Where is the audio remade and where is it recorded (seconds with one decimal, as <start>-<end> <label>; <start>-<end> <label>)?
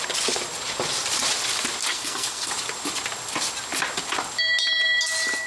0.0-1.9 recorded; 1.9-2.5 remade; 2.5-5.5 recorded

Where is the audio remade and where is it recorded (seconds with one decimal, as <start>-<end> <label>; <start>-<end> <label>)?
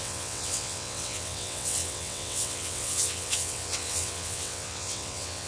0.0-5.5 remade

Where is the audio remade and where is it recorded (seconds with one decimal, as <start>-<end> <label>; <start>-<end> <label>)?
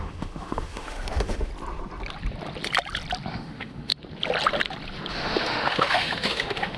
0.0-1.5 remade; 1.5-3.3 recorded; 3.3-3.9 remade; 3.9-5.1 recorded; 5.1-6.8 remade